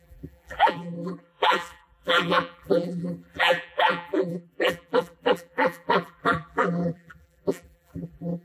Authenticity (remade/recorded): remade